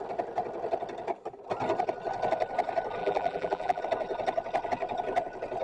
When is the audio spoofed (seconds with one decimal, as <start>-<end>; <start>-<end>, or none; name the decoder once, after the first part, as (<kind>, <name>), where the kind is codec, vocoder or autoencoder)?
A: 3.0-3.8 (vocoder, BigVGAN v2)